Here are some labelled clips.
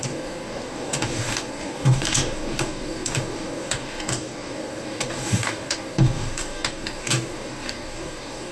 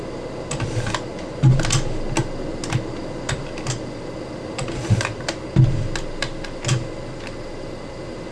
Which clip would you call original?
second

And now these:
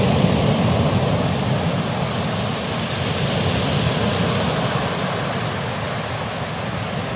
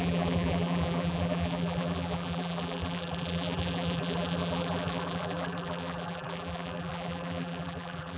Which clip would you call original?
first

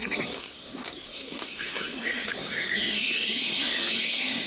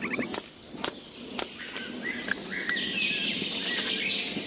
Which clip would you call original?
second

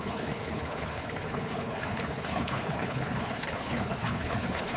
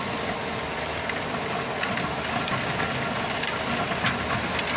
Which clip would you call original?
second